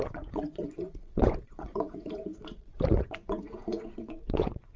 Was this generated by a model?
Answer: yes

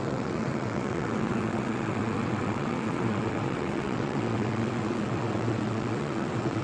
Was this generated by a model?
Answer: yes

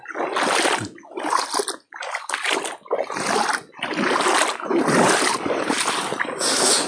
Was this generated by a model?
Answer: no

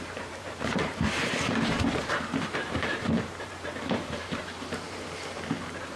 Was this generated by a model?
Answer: yes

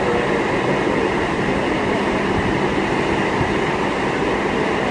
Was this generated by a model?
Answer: no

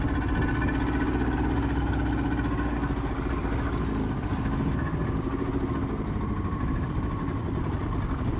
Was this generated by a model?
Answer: no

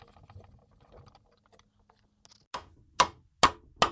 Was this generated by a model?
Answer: no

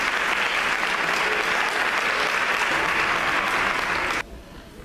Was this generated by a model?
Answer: no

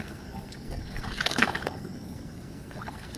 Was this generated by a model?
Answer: yes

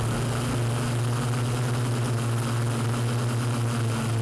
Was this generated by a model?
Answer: no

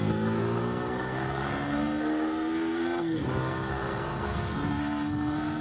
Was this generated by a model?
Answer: yes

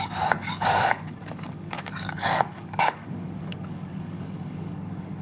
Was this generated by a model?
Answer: yes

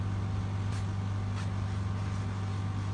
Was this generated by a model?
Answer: no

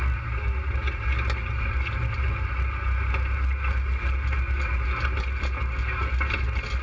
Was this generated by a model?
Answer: no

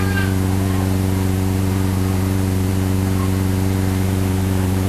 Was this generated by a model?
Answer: yes